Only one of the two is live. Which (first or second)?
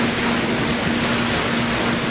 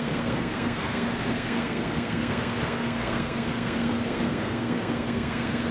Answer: first